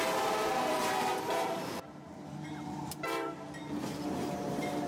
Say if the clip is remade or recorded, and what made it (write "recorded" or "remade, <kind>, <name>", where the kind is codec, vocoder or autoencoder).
remade, vocoder, BigVGAN v2